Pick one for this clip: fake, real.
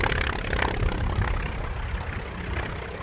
real